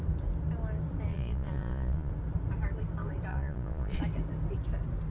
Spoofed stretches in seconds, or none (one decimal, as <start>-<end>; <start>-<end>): 1.1-2.1; 3.3-4.0